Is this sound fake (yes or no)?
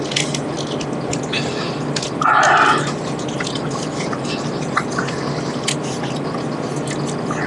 no